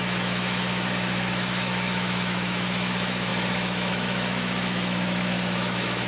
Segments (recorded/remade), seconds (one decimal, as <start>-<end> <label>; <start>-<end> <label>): 0.0-6.1 remade